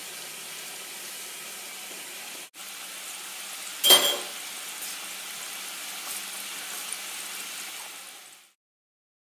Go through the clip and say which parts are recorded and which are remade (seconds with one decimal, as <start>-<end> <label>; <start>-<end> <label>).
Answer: 0.0-9.2 recorded